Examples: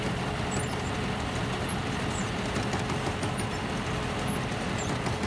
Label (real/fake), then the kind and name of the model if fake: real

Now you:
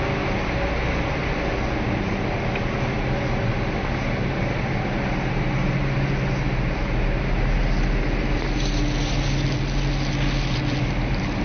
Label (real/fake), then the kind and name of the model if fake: real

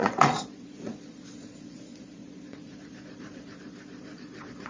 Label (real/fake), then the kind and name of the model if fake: fake, vocoder, Vocos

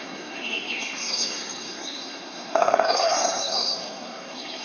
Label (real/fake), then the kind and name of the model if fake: fake, codec, SNAC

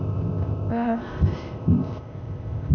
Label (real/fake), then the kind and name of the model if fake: fake, codec, ZipCodec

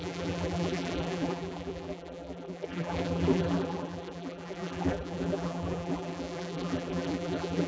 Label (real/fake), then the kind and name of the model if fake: fake, vocoder, BigVGAN v2